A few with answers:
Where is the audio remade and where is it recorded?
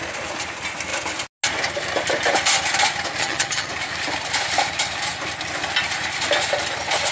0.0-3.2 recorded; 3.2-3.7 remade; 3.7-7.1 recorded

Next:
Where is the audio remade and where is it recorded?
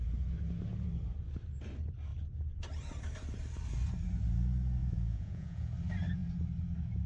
0.0-4.8 recorded; 4.8-5.7 remade; 5.7-7.1 recorded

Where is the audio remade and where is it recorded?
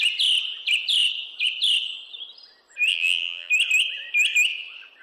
0.0-2.9 recorded; 2.9-3.5 remade; 3.5-5.0 recorded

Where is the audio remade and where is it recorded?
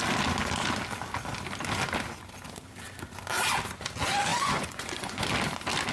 0.0-4.3 recorded; 4.3-5.3 remade; 5.3-5.9 recorded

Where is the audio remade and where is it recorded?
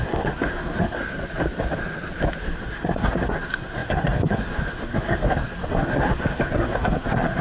0.0-1.0 remade; 1.0-2.4 recorded; 2.4-7.4 remade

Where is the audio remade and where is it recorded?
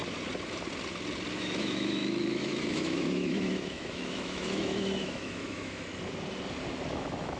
0.0-1.3 recorded; 1.3-5.9 remade; 5.9-6.9 recorded; 6.9-7.4 remade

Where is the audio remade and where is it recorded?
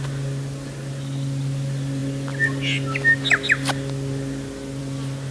0.0-5.3 recorded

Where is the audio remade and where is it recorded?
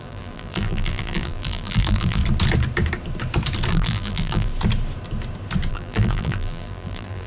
0.0-2.2 remade; 2.2-3.7 recorded; 3.7-4.5 remade; 4.5-5.7 recorded; 5.7-7.3 remade